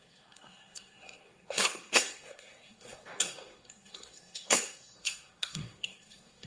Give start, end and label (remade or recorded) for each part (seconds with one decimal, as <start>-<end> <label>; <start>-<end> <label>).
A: 0.0-6.5 remade